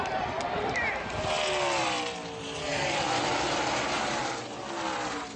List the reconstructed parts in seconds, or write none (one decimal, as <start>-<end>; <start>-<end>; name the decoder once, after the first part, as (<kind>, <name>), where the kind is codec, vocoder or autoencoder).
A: none